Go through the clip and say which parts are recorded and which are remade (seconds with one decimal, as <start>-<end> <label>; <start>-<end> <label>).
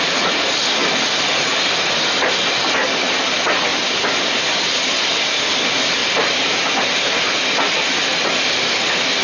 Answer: 0.0-3.7 recorded; 3.7-4.4 remade; 4.4-6.0 recorded; 6.0-6.8 remade; 6.8-9.2 recorded